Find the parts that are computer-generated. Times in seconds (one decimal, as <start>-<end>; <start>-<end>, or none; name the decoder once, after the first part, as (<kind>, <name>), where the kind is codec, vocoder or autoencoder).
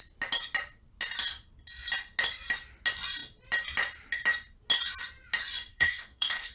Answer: 5.7-6.5 (codec, DAC)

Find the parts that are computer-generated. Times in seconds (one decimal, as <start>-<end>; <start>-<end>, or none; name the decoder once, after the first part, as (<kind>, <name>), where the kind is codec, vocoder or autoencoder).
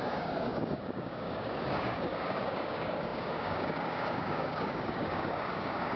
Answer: 0.0-6.0 (codec, DAC)